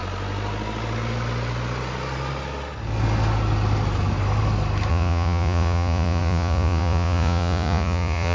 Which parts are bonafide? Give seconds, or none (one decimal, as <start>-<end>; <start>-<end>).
0.0-4.9